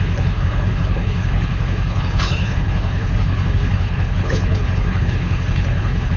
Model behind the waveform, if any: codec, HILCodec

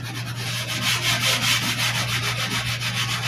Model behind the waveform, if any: none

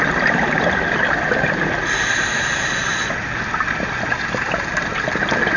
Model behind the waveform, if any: none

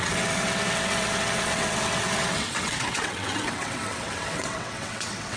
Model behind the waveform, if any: vocoder, WaveNeXt